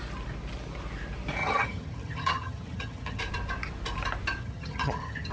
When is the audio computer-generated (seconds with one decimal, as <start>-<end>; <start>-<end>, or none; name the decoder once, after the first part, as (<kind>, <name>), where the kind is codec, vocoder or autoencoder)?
1.4-3.2 (vocoder, HiFi-GAN); 4.4-5.3